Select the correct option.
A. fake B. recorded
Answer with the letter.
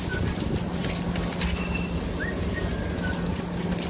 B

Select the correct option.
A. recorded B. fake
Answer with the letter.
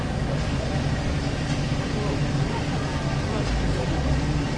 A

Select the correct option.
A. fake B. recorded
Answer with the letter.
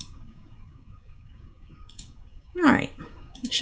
A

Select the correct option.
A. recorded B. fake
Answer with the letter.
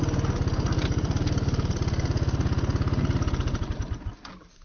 A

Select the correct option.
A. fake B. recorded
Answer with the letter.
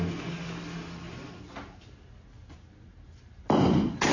B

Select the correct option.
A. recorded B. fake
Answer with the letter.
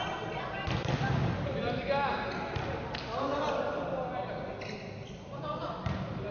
A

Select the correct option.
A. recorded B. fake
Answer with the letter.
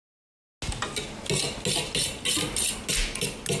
A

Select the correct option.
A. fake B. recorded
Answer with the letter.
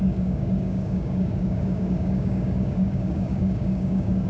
A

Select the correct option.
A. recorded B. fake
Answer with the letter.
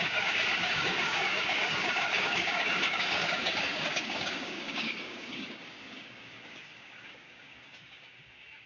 B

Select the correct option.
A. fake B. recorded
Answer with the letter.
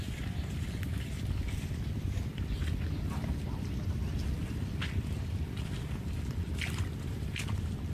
B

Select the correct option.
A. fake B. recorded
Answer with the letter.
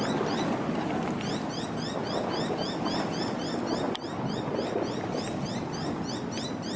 B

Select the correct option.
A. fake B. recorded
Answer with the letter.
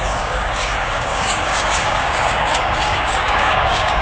A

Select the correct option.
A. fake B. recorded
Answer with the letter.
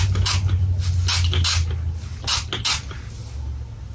B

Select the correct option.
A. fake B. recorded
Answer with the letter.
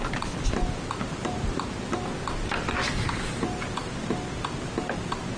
B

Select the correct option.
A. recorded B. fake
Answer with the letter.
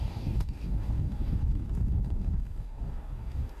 B